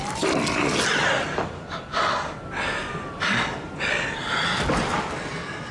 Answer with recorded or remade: recorded